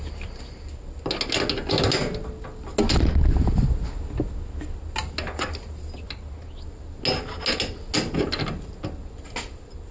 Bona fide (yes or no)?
yes